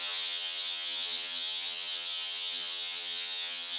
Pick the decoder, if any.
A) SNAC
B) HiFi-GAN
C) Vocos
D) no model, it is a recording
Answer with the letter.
B